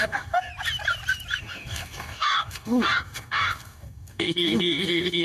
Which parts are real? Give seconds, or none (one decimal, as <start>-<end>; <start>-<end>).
0.5-1.4